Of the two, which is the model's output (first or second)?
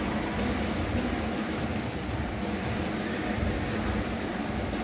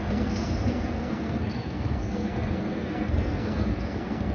second